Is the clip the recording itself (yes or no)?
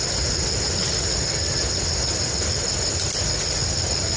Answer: yes